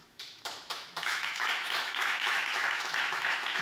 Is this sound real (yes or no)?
no